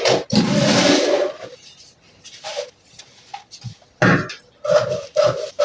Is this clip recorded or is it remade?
recorded